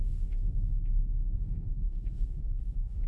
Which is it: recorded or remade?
remade